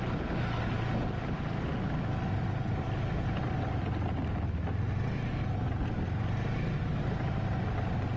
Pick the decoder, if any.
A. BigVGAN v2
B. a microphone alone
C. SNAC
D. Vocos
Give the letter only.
B